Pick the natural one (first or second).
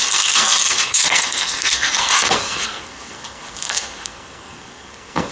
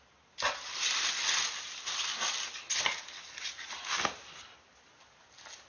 second